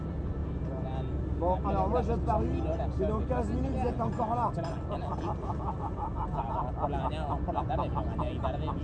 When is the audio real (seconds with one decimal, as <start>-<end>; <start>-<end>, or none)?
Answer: 0.0-8.8